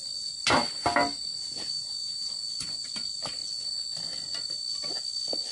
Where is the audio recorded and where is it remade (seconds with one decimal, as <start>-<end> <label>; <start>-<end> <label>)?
0.0-1.3 recorded; 1.3-2.3 remade; 2.3-5.5 recorded